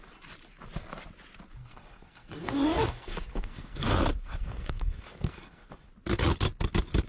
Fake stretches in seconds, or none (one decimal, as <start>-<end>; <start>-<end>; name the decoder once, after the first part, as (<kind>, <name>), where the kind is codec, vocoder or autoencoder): 1.6-5.9 (codec, SNAC)